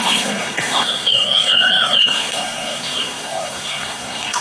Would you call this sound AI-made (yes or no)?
yes